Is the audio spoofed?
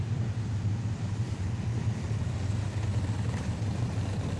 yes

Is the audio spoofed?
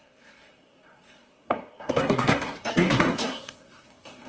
yes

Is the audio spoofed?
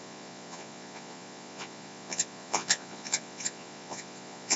yes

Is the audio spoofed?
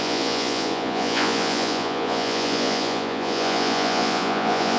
yes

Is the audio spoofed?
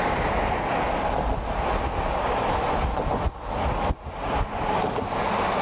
no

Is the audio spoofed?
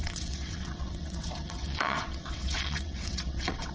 yes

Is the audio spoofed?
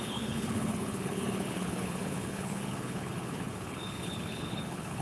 yes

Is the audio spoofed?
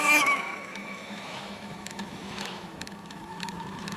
yes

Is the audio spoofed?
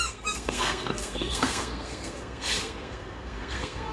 yes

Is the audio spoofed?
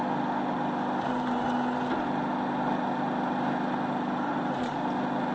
no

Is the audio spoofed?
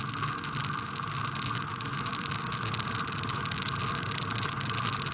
no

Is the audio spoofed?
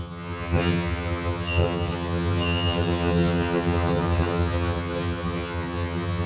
yes